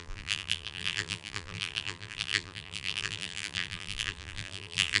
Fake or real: fake